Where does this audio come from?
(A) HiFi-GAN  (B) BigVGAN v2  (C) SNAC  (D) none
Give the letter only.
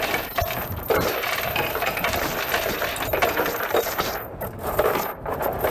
B